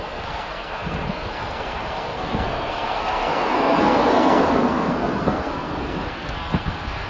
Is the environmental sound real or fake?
fake